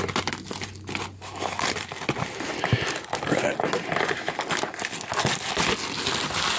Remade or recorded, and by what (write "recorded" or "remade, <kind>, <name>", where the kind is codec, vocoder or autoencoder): recorded